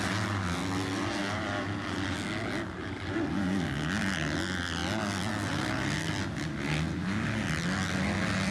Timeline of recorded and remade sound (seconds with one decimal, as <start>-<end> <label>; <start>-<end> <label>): 0.0-8.5 recorded